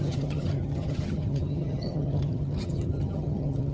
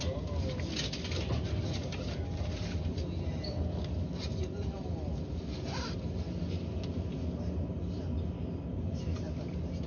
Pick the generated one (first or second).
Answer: first